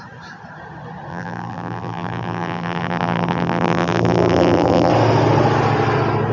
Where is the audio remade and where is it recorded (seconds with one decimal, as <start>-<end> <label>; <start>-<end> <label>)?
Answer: 0.0-1.1 recorded; 1.1-4.9 remade; 4.9-6.3 recorded